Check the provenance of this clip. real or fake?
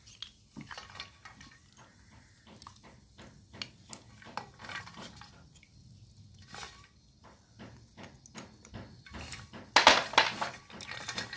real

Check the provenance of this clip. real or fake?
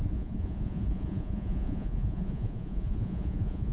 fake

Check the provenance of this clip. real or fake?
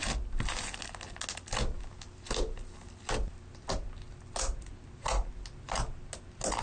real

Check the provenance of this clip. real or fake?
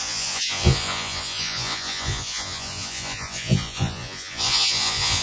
fake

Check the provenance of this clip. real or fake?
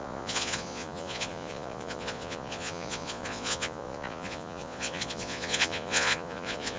fake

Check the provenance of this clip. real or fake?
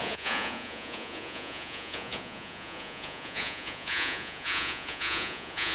fake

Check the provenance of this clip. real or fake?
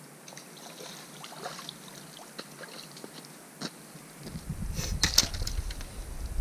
real